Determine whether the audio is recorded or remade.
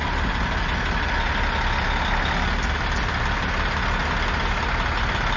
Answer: recorded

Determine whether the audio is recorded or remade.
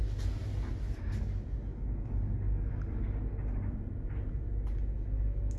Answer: recorded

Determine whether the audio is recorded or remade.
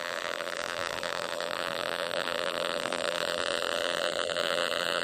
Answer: remade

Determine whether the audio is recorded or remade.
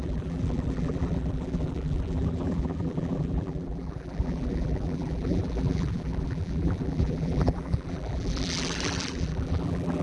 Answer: remade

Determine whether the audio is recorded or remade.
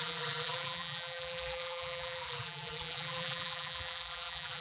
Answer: remade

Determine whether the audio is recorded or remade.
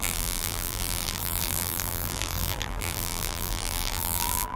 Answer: remade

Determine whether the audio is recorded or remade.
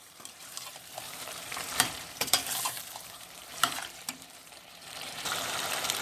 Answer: remade